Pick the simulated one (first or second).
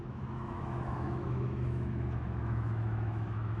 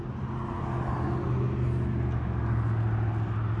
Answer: first